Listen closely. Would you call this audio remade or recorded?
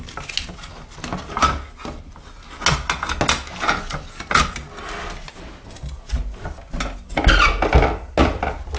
recorded